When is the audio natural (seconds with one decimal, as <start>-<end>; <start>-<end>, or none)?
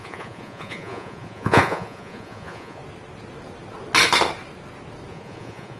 2.8-5.1